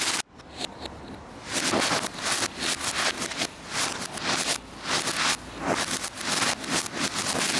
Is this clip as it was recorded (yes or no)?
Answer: yes